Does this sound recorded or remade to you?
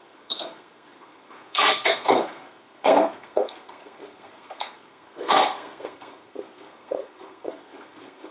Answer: remade